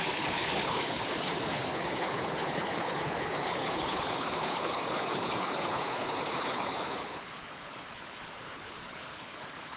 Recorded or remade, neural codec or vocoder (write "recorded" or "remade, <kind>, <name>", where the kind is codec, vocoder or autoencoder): remade, codec, HILCodec